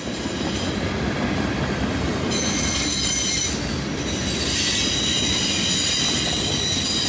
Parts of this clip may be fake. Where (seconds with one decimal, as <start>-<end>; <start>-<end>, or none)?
none

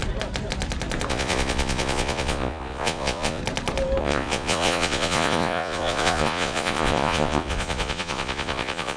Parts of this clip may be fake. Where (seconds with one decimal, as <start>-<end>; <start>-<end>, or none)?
1.1-3.4; 4.0-9.0